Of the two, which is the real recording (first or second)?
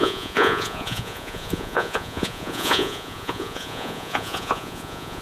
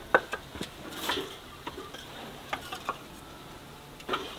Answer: second